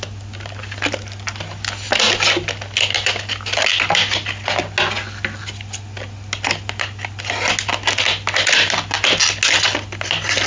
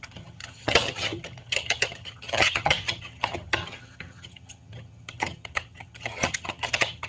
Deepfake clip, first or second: second